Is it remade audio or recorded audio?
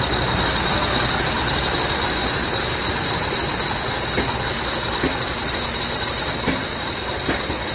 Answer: recorded